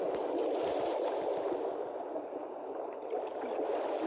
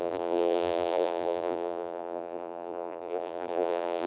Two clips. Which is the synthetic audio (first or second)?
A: second